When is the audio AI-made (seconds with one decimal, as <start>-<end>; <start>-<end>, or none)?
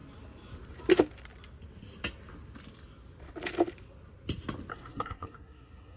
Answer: 4.7-6.0